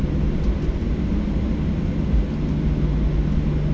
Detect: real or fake real